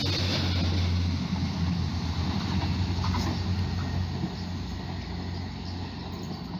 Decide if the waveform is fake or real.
real